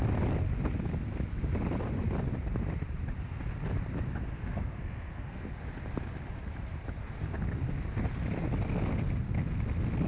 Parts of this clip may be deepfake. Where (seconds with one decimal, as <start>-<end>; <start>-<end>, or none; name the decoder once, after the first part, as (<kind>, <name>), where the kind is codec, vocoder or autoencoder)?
4.3-5.4 (codec, SNAC)